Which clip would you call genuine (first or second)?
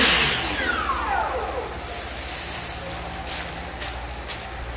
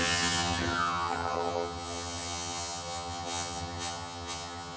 first